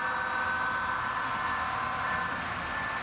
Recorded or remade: recorded